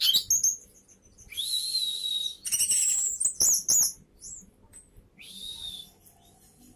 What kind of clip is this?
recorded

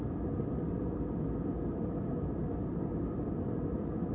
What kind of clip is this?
recorded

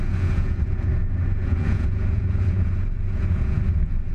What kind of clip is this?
remade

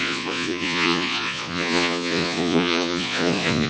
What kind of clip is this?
remade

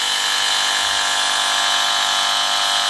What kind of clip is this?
remade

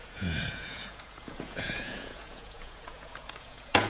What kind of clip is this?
remade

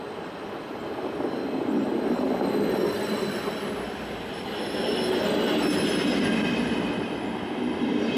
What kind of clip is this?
recorded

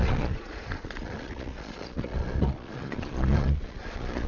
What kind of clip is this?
remade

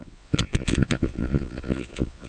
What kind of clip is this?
remade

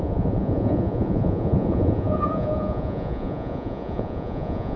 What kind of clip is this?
remade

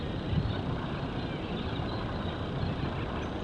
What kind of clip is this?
recorded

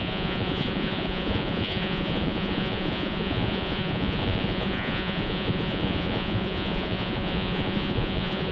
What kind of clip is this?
remade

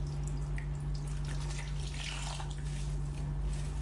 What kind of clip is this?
recorded